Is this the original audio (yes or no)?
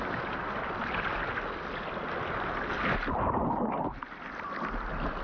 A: yes